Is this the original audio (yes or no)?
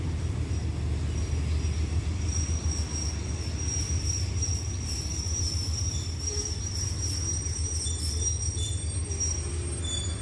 yes